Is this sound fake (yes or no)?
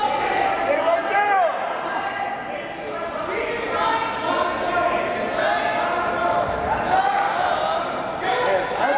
no